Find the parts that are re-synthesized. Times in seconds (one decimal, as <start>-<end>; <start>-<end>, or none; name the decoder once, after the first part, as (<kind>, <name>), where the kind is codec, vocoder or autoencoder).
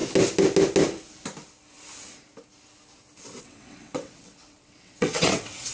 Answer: 3.4-5.7 (vocoder, WaveNeXt)